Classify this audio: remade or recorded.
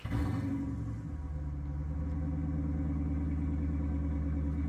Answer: recorded